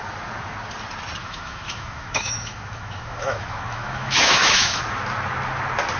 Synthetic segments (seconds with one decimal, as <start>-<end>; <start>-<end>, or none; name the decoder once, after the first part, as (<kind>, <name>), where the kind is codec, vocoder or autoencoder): 1.2-4.8 (autoencoder, DAC-VAE)